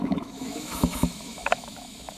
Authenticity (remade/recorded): remade